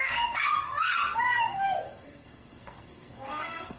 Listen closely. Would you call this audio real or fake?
fake